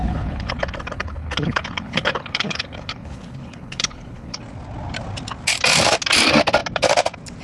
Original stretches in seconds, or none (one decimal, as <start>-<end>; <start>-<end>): 4.4-7.4